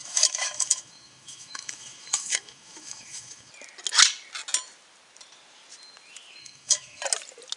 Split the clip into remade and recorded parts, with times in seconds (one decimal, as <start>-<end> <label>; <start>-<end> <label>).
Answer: 0.0-3.5 remade; 3.5-6.4 recorded; 6.4-7.0 remade; 7.0-7.6 recorded